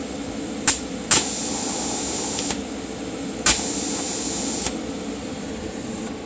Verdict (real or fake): real